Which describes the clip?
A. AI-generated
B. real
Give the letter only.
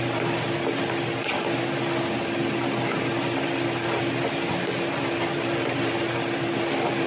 B